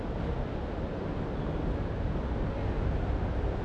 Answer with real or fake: real